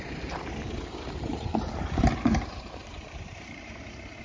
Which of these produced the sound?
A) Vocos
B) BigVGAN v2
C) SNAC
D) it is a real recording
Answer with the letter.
B